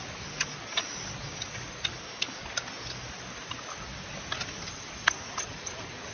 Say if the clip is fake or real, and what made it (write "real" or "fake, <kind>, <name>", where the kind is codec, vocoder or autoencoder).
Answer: real